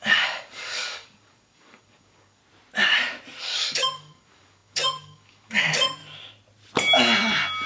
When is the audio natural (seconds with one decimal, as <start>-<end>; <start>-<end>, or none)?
2.4-3.4; 6.0-7.7